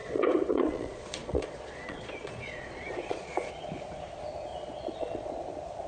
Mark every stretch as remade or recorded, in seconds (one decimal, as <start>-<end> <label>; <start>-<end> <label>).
0.0-3.5 remade; 3.5-4.5 recorded; 4.5-5.3 remade; 5.3-5.9 recorded